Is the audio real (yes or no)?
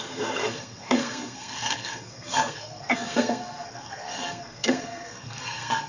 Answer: no